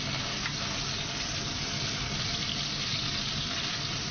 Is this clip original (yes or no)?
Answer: yes